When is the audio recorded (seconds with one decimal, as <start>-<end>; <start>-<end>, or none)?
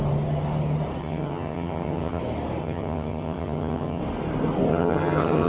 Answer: 0.0-1.0; 2.2-2.6; 4.0-4.7